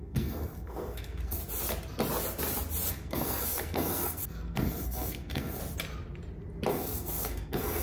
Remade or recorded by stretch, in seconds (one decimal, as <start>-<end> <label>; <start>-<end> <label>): 0.0-1.4 remade; 1.4-2.9 recorded; 2.9-5.6 remade; 5.6-6.7 recorded; 6.7-7.8 remade